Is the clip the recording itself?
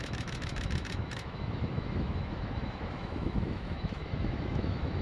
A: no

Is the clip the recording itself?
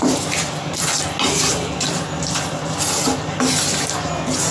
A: yes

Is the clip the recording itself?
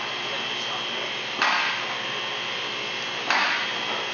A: yes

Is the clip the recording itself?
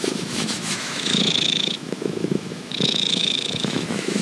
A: no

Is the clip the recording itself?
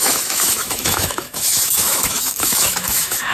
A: no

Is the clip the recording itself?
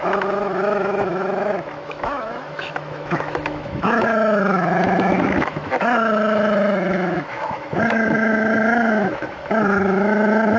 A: no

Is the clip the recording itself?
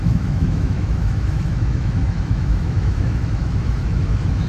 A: no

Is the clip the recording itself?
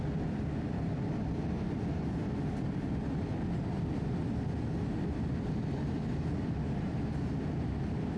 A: yes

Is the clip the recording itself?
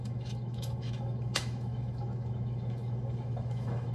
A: no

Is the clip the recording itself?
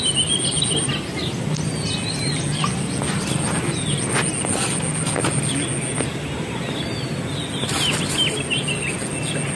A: yes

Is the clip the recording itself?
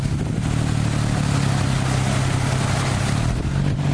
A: yes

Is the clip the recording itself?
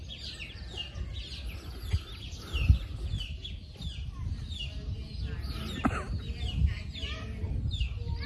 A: yes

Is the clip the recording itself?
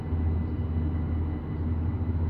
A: yes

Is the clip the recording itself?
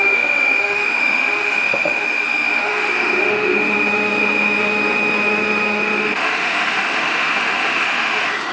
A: no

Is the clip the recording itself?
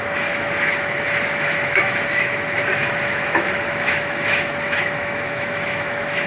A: no